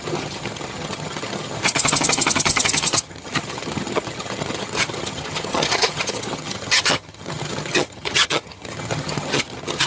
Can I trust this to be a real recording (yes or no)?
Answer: no